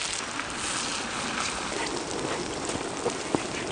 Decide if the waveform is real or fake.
real